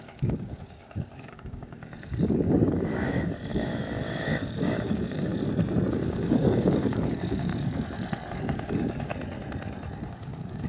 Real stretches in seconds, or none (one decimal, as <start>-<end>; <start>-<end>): 5.3-5.9; 7.5-8.4; 9.1-10.1